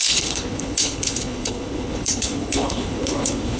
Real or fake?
fake